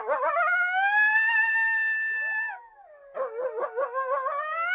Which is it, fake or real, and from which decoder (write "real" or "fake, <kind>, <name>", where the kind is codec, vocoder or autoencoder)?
real